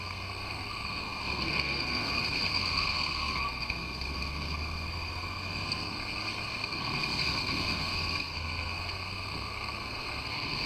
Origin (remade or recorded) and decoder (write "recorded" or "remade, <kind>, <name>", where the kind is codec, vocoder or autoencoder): remade, codec, SNAC